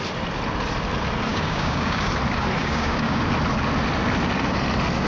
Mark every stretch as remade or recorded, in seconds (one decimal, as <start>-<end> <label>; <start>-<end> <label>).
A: 0.0-1.3 recorded; 1.3-2.1 remade; 2.1-2.6 recorded; 2.6-3.2 remade; 3.2-5.1 recorded